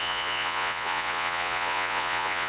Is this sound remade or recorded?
remade